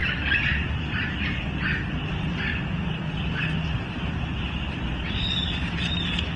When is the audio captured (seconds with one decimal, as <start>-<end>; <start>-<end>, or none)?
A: 4.3-5.6